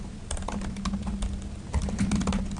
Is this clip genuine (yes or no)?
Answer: yes